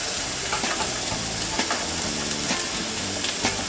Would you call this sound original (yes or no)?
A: yes